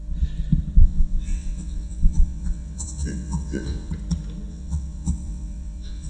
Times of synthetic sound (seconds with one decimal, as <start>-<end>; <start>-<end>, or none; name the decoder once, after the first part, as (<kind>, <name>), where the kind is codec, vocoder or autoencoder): 0.8-3.9 (vocoder, WaveNeXt); 4.5-6.1